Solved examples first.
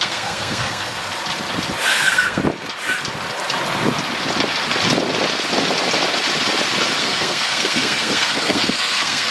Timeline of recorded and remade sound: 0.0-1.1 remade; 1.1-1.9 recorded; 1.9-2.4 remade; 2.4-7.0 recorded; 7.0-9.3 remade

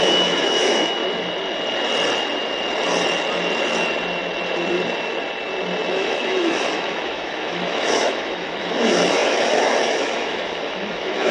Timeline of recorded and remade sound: 0.0-1.0 remade; 1.0-5.9 recorded; 5.9-11.3 remade

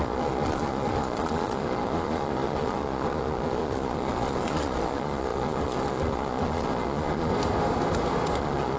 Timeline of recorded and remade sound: 0.0-7.3 remade; 7.3-8.4 recorded; 8.4-8.8 remade

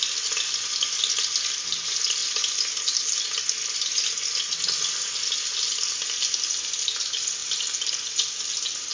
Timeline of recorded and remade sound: 0.0-7.4 recorded; 7.4-7.9 remade; 7.9-8.9 recorded

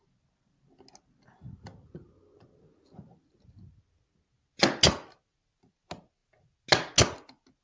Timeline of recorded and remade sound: 0.0-7.6 recorded

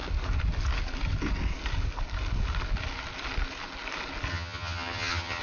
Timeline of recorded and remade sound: 0.0-4.3 recorded; 4.3-5.4 remade

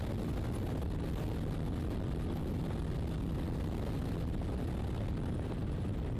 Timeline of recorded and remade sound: 0.0-6.2 recorded

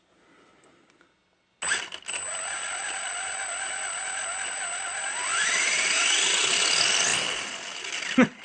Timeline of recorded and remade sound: 0.0-8.4 recorded